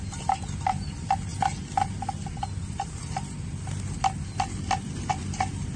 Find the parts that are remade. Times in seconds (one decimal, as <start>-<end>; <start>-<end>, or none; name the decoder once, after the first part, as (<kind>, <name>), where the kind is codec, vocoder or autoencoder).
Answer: none